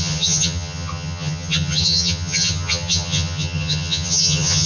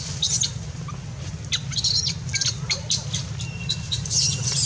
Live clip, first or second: second